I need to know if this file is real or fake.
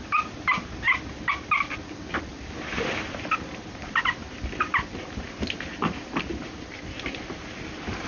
real